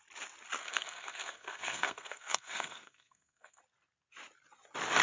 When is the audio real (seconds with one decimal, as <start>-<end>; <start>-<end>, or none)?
0.0-0.6; 3.6-5.0